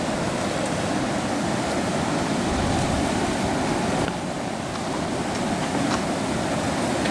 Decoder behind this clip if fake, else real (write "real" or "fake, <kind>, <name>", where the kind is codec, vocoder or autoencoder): real